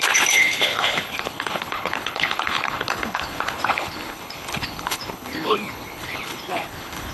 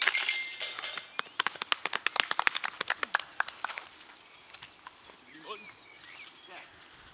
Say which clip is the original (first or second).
second